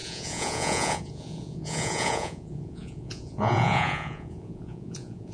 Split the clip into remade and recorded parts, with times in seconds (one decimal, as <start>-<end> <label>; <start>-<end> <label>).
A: 0.0-5.3 remade